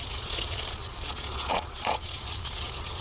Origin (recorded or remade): remade